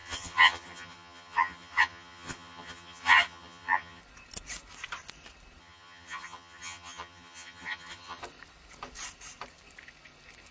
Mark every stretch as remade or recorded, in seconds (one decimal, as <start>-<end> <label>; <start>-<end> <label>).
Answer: 0.0-4.0 remade; 4.0-5.6 recorded; 5.6-8.2 remade; 8.2-10.5 recorded